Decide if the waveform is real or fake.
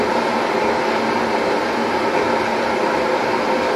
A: real